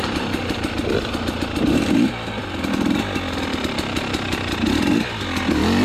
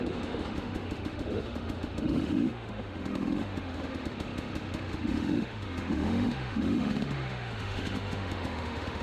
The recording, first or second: first